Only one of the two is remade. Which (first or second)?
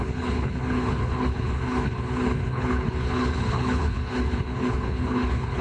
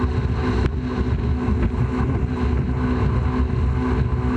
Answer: first